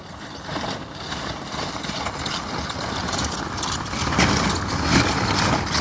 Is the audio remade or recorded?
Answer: recorded